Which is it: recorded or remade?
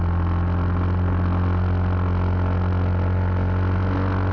recorded